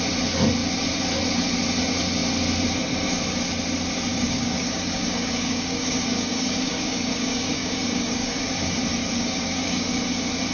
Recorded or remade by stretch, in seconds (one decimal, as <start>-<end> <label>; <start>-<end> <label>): 0.0-4.1 recorded; 4.1-8.5 remade; 8.5-9.0 recorded; 9.0-9.9 remade; 9.9-10.5 recorded